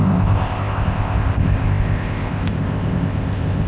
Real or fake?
fake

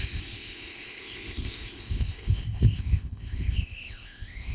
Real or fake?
fake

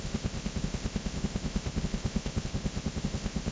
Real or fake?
fake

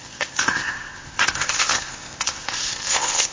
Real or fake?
fake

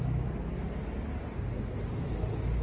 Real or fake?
real